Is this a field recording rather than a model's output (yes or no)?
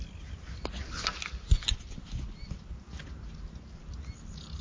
yes